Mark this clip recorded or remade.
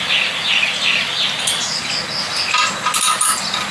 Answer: recorded